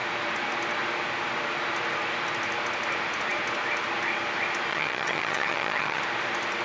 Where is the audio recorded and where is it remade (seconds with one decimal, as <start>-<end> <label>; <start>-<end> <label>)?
0.0-4.7 recorded; 4.7-6.0 remade; 6.0-6.6 recorded